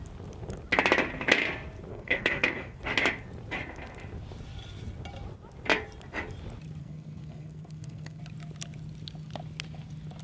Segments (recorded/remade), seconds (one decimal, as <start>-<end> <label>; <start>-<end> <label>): 0.0-1.9 recorded; 1.9-2.8 remade; 2.8-6.8 recorded; 6.8-8.2 remade; 8.2-10.2 recorded